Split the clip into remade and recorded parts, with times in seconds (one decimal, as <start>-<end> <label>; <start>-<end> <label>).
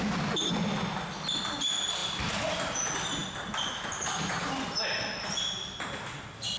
0.0-6.6 recorded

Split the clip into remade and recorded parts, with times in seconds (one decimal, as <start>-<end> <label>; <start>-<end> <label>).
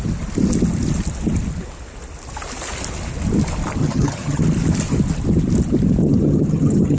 0.0-3.8 recorded; 3.8-4.4 remade; 4.4-6.0 recorded; 6.0-7.0 remade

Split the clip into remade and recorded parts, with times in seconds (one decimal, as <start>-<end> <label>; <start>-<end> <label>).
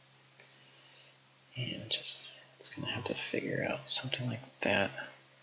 0.0-5.4 recorded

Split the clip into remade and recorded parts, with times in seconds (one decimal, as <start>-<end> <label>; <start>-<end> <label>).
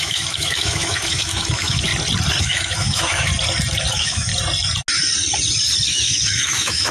0.0-1.9 remade; 1.9-2.4 recorded; 2.4-3.3 remade; 3.3-3.9 recorded; 3.9-4.3 remade; 4.3-5.9 recorded; 5.9-6.9 remade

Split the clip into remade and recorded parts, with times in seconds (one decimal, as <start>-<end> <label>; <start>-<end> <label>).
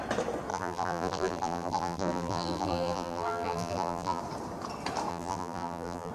0.0-0.5 recorded; 0.5-4.2 remade; 4.2-5.1 recorded; 5.1-6.1 remade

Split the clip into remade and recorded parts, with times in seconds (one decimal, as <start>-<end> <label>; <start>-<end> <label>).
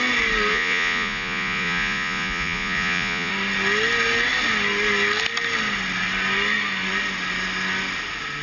0.0-0.5 recorded; 0.5-3.3 remade; 3.3-8.4 recorded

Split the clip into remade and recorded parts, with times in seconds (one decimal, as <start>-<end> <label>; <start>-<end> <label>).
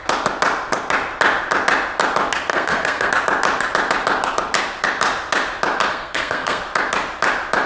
0.0-2.5 recorded; 2.5-3.1 remade; 3.1-5.9 recorded; 5.9-6.6 remade; 6.6-7.7 recorded